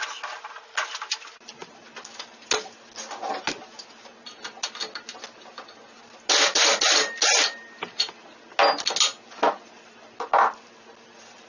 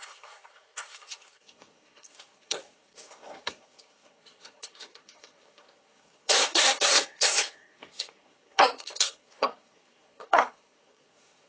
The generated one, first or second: second